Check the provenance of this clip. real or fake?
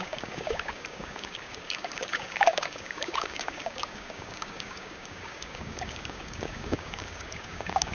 fake